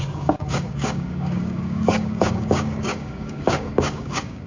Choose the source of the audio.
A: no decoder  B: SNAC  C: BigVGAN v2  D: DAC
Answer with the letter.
D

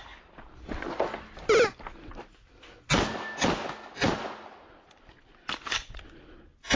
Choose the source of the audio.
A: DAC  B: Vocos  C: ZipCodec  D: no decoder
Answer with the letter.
D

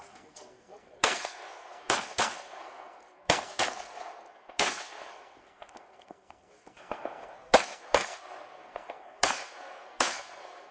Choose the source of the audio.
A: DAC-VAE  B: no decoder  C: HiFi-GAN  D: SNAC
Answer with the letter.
D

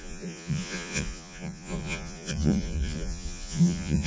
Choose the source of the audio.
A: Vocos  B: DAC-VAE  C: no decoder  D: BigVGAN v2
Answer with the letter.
A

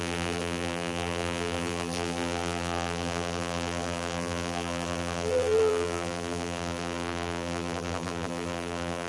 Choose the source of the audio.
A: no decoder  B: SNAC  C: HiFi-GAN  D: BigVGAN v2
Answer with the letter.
D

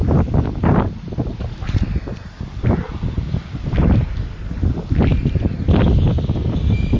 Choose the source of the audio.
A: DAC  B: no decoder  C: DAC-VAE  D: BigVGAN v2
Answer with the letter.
B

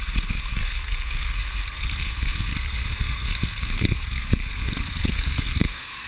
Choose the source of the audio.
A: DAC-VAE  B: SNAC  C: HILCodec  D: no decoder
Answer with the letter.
B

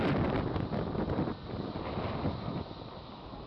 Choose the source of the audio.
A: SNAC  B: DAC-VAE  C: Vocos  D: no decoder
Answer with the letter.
D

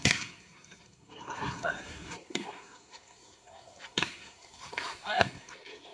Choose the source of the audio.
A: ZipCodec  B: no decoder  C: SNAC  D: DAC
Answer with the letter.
C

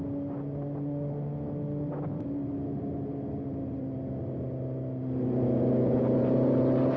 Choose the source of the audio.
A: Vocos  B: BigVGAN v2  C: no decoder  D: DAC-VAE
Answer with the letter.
C